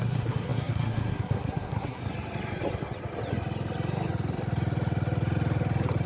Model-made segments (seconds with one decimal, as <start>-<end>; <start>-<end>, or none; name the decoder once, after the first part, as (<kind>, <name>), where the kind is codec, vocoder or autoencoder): 0.0-2.0 (codec, SNAC)